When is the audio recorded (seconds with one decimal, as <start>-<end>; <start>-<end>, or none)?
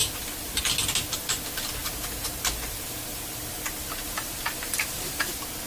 0.6-1.8; 5.2-5.7